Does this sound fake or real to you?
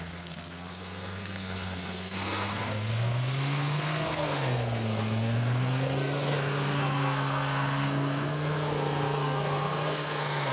fake